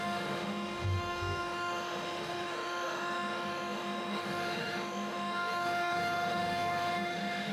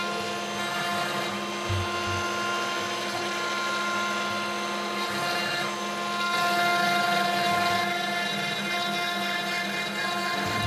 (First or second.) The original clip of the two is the second